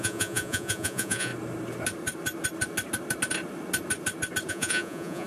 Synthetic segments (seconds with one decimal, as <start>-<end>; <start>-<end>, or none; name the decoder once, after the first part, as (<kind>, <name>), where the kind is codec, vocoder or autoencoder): 0.0-1.3 (vocoder, Vocos); 4.5-5.3